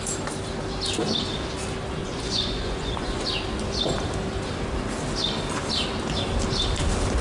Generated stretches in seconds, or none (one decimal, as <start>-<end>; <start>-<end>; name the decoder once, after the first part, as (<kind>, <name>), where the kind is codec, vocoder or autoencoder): 2.0-3.2 (vocoder, Vocos)